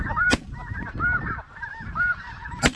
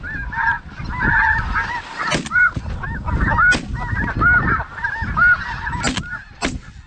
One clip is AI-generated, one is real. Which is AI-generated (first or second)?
first